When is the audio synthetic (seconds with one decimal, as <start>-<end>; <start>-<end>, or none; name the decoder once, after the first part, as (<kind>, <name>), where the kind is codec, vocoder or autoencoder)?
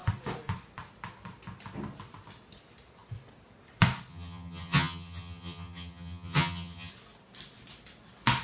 4.1-6.9 (vocoder, HiFi-GAN)